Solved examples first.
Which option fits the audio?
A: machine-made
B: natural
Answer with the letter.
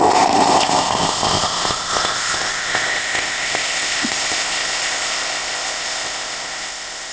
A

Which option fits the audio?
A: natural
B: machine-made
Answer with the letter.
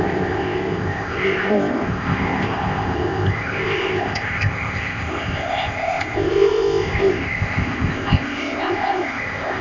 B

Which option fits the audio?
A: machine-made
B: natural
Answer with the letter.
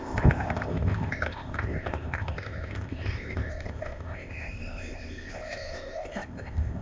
A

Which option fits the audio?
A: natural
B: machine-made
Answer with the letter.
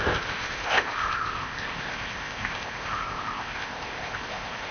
B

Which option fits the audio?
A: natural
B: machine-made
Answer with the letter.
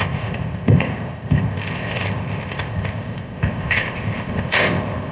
B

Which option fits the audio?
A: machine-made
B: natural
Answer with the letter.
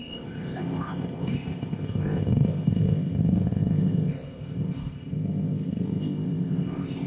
A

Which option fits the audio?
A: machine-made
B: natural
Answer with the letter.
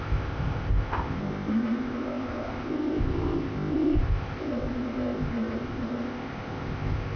A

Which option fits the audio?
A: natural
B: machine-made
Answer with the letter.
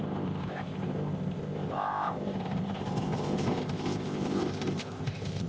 B